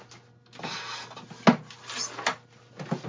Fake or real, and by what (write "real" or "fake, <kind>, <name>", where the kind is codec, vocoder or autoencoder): real